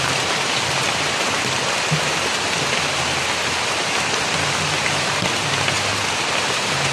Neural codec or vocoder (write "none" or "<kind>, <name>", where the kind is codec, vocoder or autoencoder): none